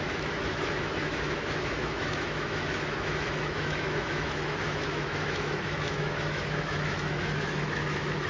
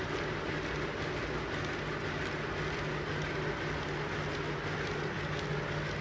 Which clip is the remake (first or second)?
first